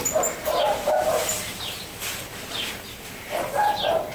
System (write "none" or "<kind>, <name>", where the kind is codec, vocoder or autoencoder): vocoder, BigVGAN v2